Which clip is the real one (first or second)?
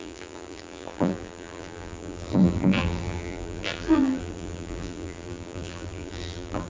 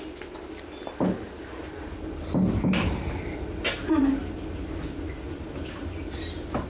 second